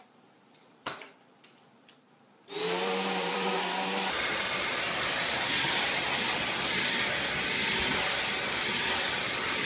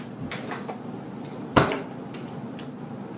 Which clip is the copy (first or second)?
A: first